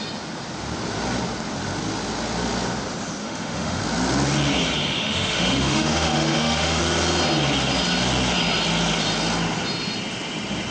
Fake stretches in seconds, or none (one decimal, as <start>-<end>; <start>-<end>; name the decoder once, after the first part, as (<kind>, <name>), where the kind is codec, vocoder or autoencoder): 3.2-3.8 (autoencoder, DAC-VAE); 4.8-6.8